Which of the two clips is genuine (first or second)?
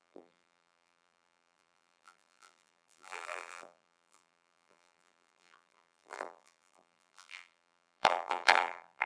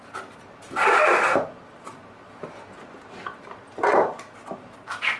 second